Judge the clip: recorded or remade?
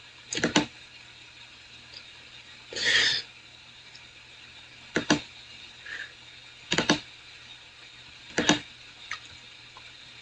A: recorded